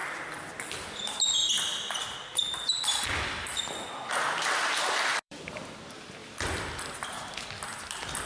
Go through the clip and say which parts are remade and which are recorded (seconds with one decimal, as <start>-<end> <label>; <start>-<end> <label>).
0.0-5.1 recorded; 5.1-5.6 remade; 5.6-6.2 recorded; 6.2-7.5 remade; 7.5-8.3 recorded